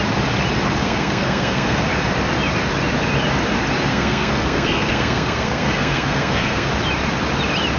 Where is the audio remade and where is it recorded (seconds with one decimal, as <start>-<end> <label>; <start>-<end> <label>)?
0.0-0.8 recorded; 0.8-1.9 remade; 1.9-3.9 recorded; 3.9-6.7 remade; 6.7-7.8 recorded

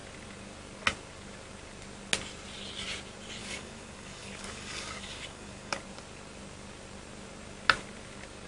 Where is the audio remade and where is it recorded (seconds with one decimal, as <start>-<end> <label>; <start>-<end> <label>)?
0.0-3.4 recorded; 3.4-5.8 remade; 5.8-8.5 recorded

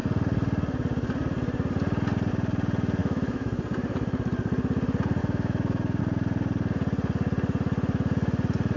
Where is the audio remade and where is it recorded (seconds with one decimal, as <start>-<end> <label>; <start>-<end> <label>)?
0.0-3.0 recorded; 3.0-3.6 remade; 3.6-5.2 recorded; 5.2-6.0 remade; 6.0-8.8 recorded